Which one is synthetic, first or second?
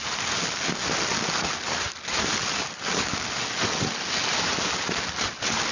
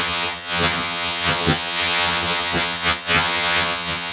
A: second